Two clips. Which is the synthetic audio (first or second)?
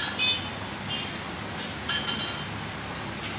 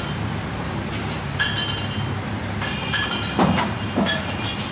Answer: second